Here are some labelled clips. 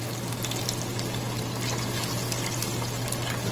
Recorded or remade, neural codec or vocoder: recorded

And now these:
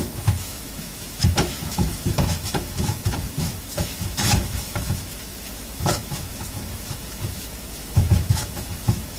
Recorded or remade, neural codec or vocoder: remade, autoencoder, DAC-VAE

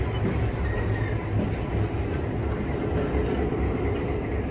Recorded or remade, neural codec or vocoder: recorded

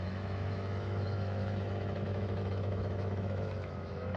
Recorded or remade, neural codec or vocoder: remade, autoencoder, DAC-VAE